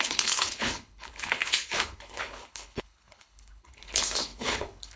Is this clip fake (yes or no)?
yes